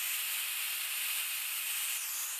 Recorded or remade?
recorded